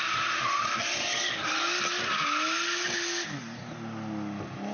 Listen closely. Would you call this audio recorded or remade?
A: recorded